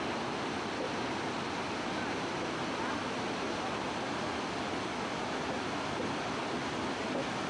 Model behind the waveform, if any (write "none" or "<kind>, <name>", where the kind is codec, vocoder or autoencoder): none